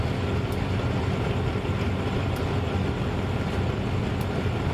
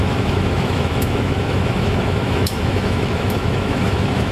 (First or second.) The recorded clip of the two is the first